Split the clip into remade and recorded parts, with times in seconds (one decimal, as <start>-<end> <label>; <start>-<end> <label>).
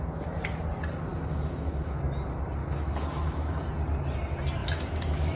0.0-1.1 recorded; 1.1-2.0 remade; 2.0-2.6 recorded; 2.6-3.6 remade; 3.6-4.6 recorded; 4.6-5.4 remade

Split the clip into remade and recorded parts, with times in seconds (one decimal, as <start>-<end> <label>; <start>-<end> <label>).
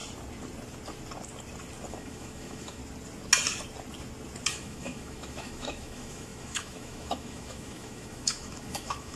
0.0-1.9 recorded; 1.9-2.8 remade; 2.8-4.5 recorded; 4.5-9.2 remade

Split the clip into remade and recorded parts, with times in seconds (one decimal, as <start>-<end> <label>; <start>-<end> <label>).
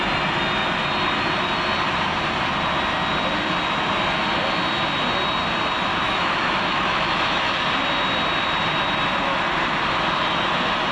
0.0-5.9 recorded; 5.9-7.5 remade; 7.5-10.9 recorded